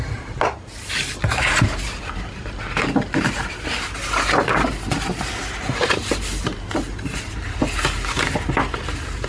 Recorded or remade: recorded